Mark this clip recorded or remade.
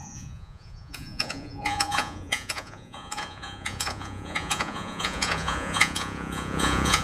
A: remade